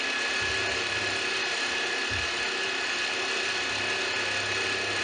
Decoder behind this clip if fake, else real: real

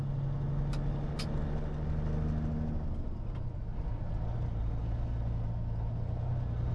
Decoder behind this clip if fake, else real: real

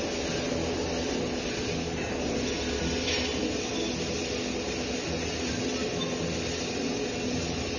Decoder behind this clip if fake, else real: real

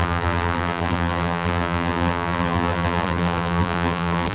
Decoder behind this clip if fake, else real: fake, vocoder, BigVGAN v2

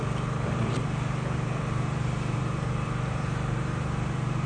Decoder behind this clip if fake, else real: fake, vocoder, BigVGAN v2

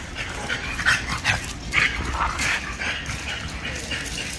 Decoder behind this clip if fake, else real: fake, vocoder, BigVGAN v2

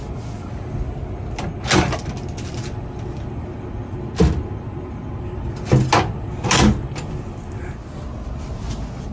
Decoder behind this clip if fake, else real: real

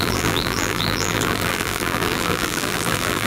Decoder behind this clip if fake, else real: fake, vocoder, BigVGAN v2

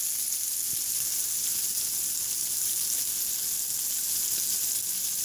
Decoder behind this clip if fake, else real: real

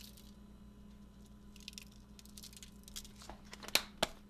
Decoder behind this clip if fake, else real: real